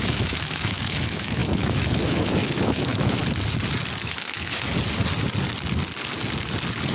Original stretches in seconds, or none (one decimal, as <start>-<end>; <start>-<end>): 3.2-4.0; 4.7-6.9